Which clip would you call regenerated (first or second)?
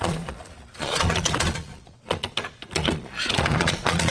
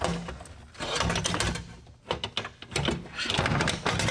first